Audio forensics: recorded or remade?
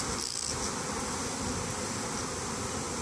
recorded